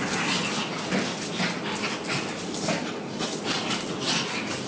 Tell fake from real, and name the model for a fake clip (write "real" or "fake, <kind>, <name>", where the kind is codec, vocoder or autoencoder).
real